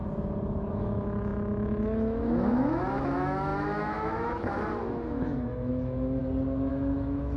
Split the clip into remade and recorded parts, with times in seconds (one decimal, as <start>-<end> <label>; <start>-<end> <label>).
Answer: 0.0-0.7 recorded; 0.7-6.2 remade; 6.2-6.7 recorded; 6.7-7.4 remade